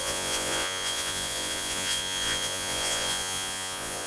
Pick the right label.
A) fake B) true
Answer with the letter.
A